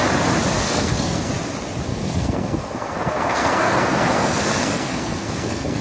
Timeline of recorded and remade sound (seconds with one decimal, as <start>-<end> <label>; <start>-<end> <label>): 0.0-0.6 recorded; 0.6-1.3 remade; 1.3-1.9 recorded; 1.9-5.8 remade